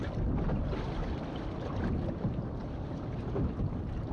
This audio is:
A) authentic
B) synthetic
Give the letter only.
A